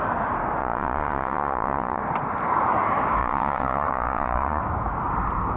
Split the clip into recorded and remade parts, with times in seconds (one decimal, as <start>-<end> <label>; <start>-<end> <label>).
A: 0.0-0.6 recorded; 0.6-2.0 remade; 2.0-3.2 recorded; 3.2-4.6 remade; 4.6-5.6 recorded